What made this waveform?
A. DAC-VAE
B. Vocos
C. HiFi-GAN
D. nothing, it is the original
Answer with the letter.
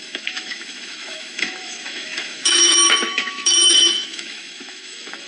A